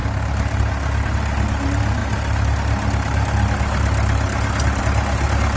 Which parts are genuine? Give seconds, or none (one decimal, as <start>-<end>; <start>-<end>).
0.0-5.6